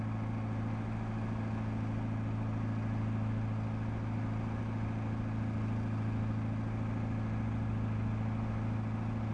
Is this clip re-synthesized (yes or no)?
no